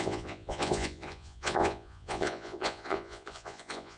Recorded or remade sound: remade